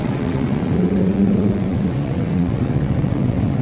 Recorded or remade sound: remade